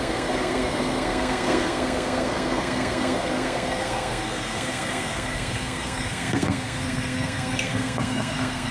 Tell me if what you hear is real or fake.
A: fake